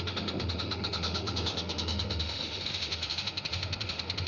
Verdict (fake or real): fake